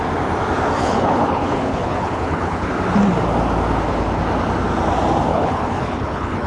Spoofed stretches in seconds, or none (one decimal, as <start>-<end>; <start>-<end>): 0.8-2.7; 5.3-6.5